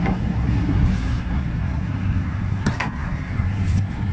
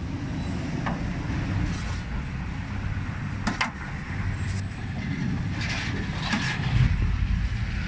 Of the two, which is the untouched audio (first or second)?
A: second